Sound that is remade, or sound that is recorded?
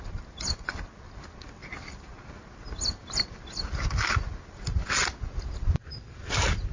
recorded